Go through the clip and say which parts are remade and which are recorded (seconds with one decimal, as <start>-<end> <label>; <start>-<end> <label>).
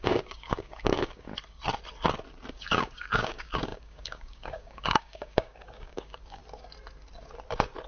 0.0-1.3 remade; 1.3-2.5 recorded; 2.5-6.4 remade; 6.4-7.9 recorded